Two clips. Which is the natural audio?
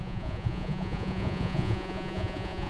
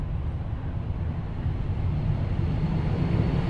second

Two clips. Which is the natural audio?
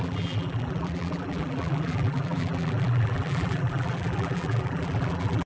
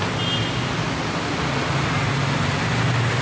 second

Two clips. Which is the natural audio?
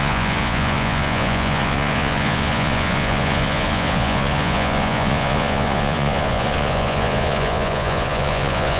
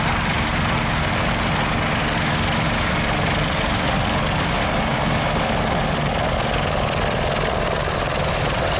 second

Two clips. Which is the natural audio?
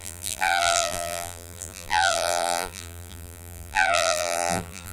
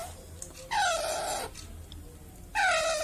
second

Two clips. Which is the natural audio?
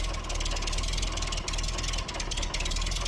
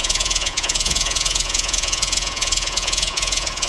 first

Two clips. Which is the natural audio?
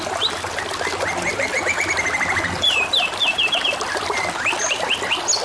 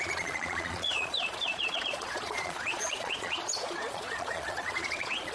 first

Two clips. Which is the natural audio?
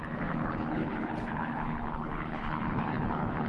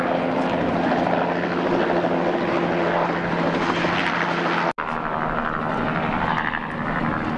second